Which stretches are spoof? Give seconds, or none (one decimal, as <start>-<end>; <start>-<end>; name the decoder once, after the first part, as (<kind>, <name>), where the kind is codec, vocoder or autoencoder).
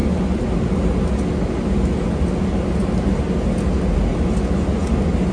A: none